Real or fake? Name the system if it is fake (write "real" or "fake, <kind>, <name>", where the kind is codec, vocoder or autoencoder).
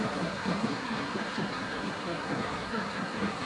fake, codec, SNAC